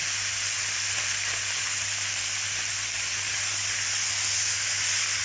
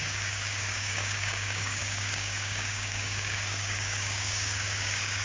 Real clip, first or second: first